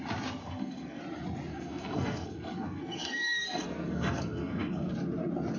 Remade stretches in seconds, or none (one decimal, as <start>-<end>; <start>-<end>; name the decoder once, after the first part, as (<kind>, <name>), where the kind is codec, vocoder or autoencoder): 0.4-1.0 (codec, SNAC); 1.5-4.9